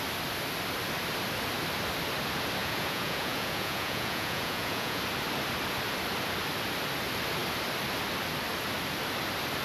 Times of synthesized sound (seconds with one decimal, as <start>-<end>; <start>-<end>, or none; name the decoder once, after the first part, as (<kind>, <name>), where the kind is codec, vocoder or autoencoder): 2.6-5.0 (vocoder, Vocos)